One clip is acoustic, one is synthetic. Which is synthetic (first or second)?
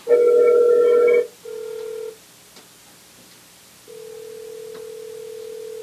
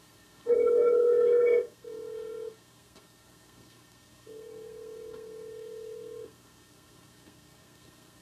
second